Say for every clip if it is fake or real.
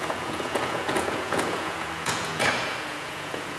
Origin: fake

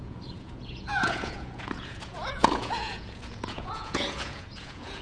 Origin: fake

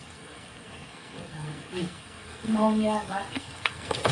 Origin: fake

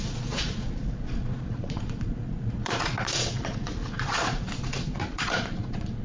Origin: fake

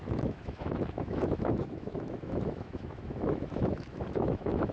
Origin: fake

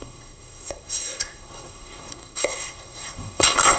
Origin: fake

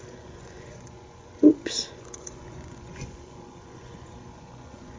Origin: fake